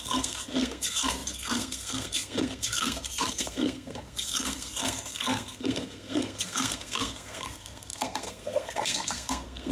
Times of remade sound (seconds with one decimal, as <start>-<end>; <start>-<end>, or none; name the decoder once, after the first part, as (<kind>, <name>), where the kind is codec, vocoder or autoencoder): 0.0-9.7 (codec, SNAC)